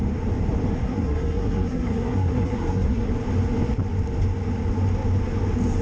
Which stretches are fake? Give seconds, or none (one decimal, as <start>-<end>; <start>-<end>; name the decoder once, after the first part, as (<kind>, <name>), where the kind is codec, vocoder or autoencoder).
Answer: 0.8-3.1 (codec, SNAC)